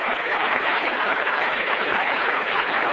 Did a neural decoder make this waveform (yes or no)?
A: yes